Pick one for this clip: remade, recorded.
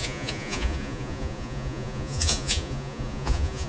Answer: remade